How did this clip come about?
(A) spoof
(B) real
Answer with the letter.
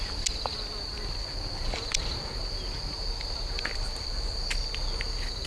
B